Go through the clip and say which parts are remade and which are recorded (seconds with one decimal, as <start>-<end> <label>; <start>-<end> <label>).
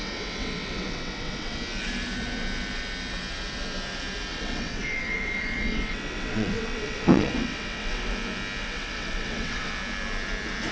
0.0-1.6 remade; 1.6-4.3 recorded; 4.3-8.1 remade; 8.1-8.6 recorded; 8.6-9.7 remade; 9.7-10.7 recorded